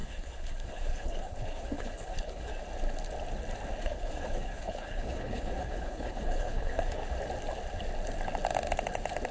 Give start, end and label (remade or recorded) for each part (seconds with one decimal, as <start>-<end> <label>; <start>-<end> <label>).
0.0-2.5 remade; 2.5-3.8 recorded; 3.8-7.0 remade; 7.0-9.3 recorded

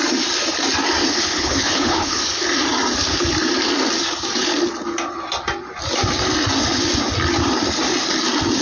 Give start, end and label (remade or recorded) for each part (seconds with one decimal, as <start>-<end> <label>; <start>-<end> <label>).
0.0-1.0 recorded; 1.0-2.2 remade; 2.2-8.6 recorded

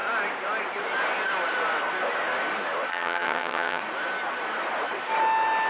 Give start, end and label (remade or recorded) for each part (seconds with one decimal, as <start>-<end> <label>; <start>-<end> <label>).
0.0-2.9 recorded; 2.9-3.8 remade; 3.8-5.7 recorded

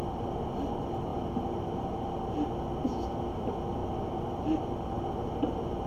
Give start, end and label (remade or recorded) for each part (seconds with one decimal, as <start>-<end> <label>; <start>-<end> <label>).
0.0-1.1 remade; 1.1-2.6 recorded; 2.6-5.9 remade

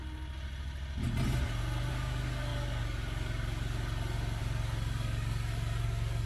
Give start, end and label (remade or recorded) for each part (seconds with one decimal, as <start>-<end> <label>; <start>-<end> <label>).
0.0-1.9 recorded; 1.9-6.3 remade

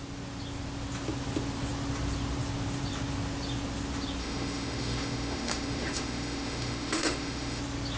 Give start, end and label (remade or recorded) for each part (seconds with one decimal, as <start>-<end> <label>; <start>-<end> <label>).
0.0-4.2 recorded; 4.2-7.6 remade; 7.6-8.0 recorded

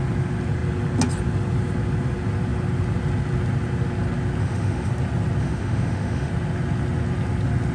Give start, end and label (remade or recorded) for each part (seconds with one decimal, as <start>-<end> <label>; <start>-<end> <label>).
0.0-4.4 recorded; 4.4-4.9 remade; 4.9-5.4 recorded; 5.4-6.3 remade; 6.3-7.7 recorded

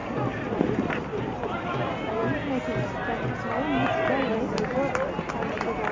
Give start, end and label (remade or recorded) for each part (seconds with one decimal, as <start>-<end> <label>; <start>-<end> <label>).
0.0-5.9 recorded